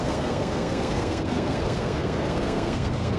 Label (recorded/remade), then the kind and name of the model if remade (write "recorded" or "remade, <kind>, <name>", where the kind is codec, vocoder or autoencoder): remade, codec, SNAC